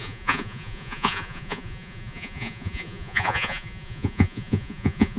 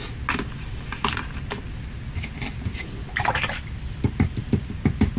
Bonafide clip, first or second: second